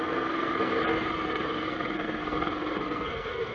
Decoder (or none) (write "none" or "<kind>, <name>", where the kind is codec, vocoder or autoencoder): codec, SNAC